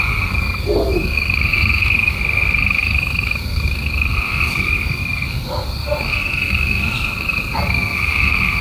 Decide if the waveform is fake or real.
fake